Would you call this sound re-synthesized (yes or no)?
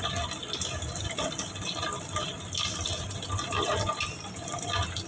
no